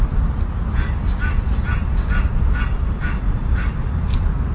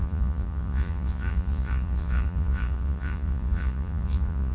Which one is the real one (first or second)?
first